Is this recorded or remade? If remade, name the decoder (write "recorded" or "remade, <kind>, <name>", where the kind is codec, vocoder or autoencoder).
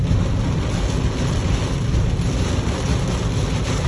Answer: recorded